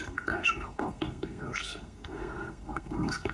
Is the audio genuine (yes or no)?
no